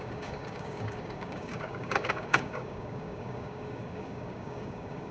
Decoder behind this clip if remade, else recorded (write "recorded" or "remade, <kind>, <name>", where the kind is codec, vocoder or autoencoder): remade, codec, DAC